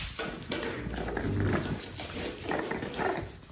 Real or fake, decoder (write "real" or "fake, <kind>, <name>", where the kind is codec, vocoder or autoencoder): real